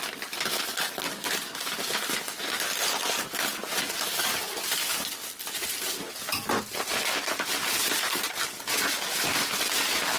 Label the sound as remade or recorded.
recorded